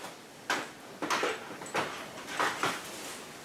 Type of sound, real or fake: real